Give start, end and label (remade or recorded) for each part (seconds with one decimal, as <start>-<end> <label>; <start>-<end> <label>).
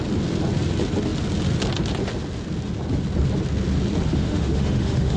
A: 0.0-4.1 recorded; 4.1-5.2 remade